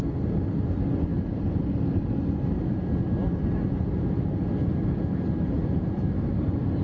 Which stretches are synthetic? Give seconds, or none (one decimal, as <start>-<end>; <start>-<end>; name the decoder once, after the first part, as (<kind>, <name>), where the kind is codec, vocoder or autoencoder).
1.1-2.0 (vocoder, BigVGAN v2); 3.2-4.4; 5.8-6.3